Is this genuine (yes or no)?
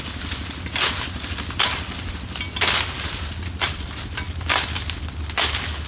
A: yes